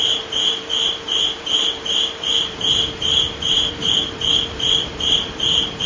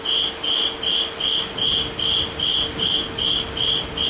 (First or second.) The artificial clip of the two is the first